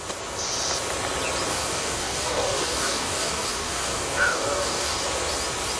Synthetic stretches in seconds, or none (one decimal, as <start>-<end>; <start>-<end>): 1.5-5.0

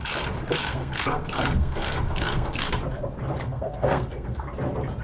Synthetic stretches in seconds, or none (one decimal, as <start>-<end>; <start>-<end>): 0.6-2.8; 3.4-4.5

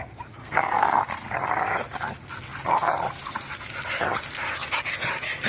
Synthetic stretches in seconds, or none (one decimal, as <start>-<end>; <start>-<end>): 0.4-1.0

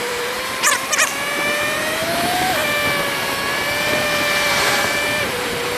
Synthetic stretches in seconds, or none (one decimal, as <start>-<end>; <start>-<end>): 0.0-2.6; 3.9-5.8

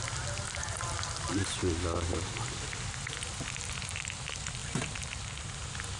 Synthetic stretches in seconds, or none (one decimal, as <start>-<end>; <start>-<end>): 4.6-5.6

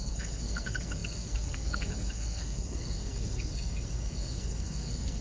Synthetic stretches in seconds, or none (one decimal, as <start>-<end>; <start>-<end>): 0.0-5.2

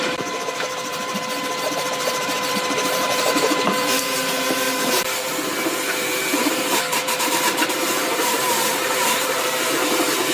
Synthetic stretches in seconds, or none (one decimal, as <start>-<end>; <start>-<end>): 0.0-0.9; 1.7-10.3